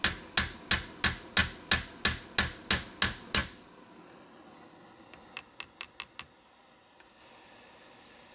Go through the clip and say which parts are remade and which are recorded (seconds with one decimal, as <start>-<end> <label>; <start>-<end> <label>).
0.0-8.3 recorded